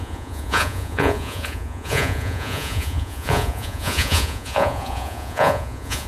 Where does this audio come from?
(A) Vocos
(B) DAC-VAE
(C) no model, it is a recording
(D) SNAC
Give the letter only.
A